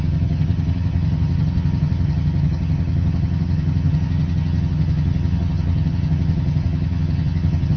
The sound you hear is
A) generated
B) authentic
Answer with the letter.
A